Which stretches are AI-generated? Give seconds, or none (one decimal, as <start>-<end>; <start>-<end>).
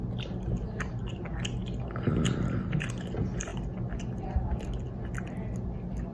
none